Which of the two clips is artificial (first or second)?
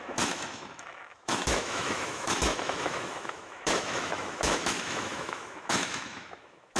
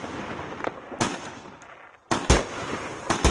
first